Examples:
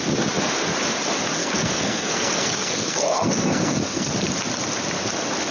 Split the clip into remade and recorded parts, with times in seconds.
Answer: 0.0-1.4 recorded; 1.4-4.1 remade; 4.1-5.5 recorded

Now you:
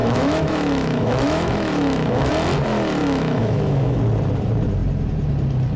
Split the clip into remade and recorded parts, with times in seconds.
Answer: 0.0-2.3 remade; 2.3-3.0 recorded; 3.0-4.0 remade; 4.0-5.8 recorded

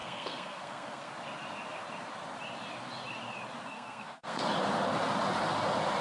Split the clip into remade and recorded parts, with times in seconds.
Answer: 0.0-1.1 remade; 1.1-3.7 recorded; 3.7-4.4 remade; 4.4-6.0 recorded

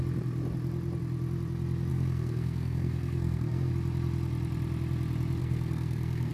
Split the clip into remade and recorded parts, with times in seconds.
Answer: 0.0-1.9 recorded; 1.9-3.7 remade; 3.7-5.4 recorded; 5.4-6.3 remade